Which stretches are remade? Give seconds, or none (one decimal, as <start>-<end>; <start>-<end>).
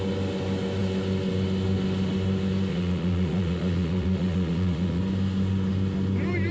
2.7-5.0